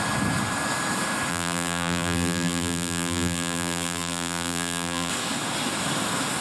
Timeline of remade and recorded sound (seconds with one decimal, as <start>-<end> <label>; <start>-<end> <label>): 0.0-1.3 recorded; 1.3-5.1 remade; 5.1-6.4 recorded